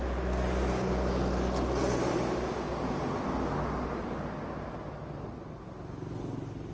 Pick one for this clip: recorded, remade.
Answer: recorded